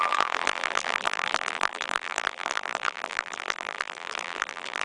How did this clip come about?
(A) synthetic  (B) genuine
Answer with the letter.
A